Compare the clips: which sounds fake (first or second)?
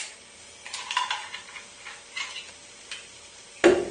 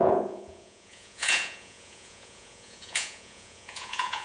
second